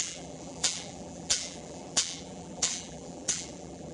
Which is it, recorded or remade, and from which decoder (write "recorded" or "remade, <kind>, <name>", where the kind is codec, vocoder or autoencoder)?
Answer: remade, vocoder, BigVGAN v2